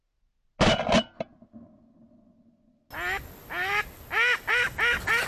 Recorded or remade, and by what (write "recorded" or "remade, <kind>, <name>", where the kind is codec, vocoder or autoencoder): recorded